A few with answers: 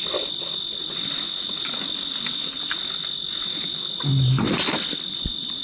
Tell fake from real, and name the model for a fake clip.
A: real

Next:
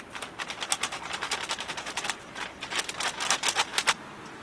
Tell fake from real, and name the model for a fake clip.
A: real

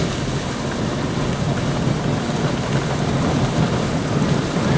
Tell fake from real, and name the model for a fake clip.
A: real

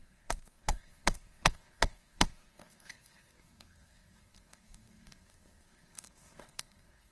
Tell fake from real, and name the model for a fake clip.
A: fake, codec, SNAC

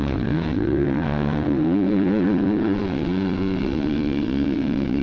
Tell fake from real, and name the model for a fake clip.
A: fake, vocoder, WaveNeXt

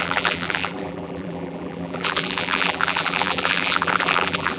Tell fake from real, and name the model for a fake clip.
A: fake, vocoder, BigVGAN v2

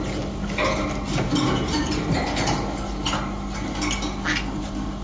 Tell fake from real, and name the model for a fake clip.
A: real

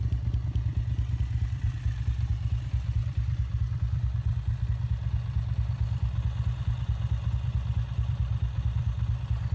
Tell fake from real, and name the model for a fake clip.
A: real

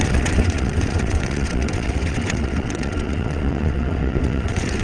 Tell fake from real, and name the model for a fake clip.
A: fake, vocoder, WaveNeXt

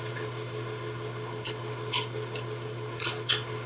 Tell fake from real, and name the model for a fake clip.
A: fake, codec, HILCodec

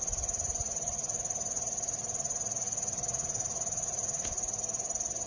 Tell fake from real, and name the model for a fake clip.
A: real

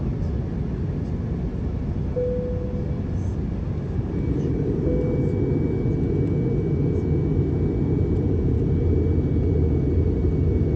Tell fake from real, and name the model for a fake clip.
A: real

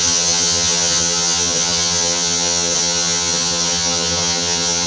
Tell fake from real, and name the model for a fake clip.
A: fake, vocoder, HiFi-GAN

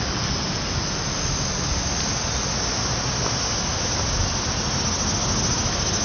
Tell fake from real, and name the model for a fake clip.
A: real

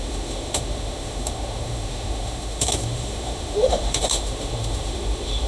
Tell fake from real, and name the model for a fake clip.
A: fake, autoencoder, DAC-VAE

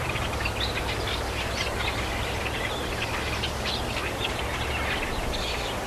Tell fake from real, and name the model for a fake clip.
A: real